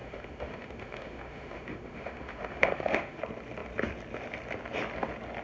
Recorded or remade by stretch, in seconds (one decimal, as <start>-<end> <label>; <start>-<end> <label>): 0.0-3.2 remade; 3.2-5.4 recorded